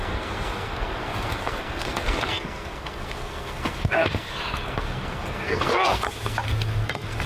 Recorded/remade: remade